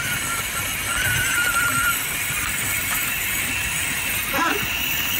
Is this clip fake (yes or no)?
no